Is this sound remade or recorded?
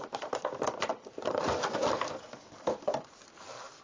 remade